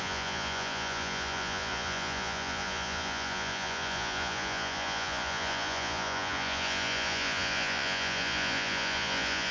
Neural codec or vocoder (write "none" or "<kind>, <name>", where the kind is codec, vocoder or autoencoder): vocoder, Vocos